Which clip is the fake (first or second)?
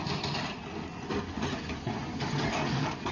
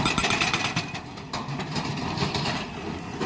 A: second